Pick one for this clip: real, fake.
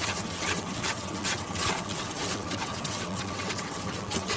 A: fake